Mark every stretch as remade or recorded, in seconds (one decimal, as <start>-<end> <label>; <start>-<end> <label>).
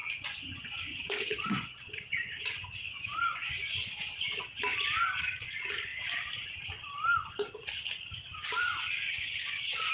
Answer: 0.0-4.2 remade; 4.2-8.3 recorded; 8.3-9.9 remade